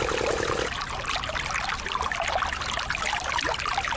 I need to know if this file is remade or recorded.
recorded